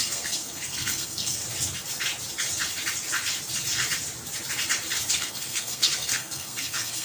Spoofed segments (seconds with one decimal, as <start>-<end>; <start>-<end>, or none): 0.0-1.4; 5.1-7.0